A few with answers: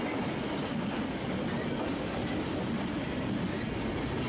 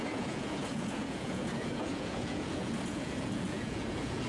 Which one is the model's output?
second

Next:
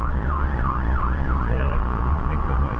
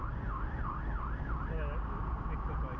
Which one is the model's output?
first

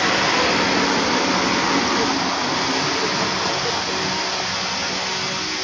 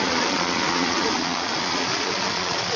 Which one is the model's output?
second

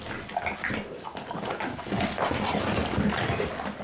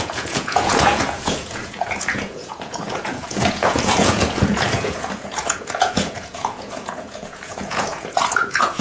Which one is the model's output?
second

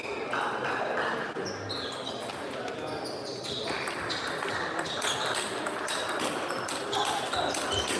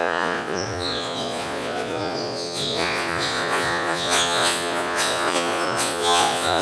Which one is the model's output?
second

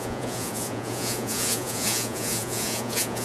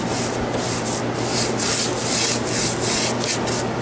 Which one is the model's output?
first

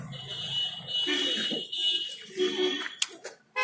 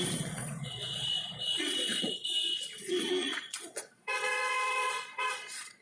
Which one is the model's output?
second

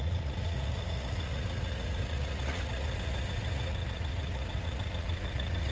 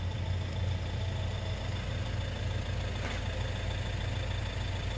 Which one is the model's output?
first